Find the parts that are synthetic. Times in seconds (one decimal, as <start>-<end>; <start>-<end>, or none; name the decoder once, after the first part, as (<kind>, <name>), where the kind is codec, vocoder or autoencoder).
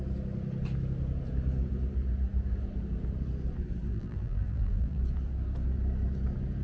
3.9-5.0 (vocoder, BigVGAN v2)